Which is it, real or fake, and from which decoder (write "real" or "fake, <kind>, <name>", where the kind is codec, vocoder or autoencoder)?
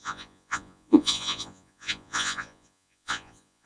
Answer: fake, vocoder, Vocos